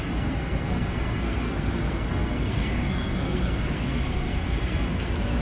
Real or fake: fake